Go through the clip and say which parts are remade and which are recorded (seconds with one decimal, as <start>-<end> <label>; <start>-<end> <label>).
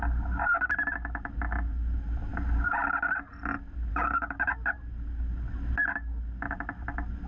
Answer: 0.0-7.3 recorded